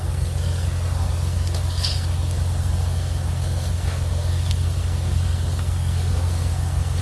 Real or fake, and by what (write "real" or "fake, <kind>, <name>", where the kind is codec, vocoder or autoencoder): fake, codec, SNAC